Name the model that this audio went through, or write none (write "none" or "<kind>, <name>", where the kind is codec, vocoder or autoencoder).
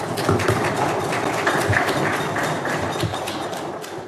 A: vocoder, BigVGAN v2